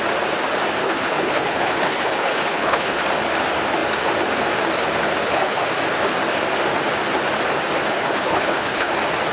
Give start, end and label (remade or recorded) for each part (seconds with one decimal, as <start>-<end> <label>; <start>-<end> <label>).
0.0-0.8 recorded; 0.8-3.0 remade; 3.0-5.2 recorded; 5.2-5.7 remade; 5.7-7.9 recorded; 7.9-8.9 remade; 8.9-9.3 recorded